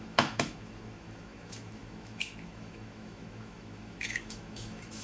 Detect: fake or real fake